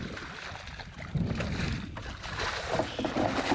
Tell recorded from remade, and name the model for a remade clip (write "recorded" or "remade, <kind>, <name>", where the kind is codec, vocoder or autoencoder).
recorded